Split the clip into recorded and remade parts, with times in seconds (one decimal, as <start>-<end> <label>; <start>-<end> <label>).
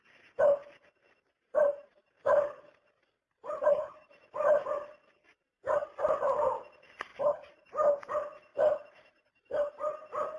0.0-10.4 recorded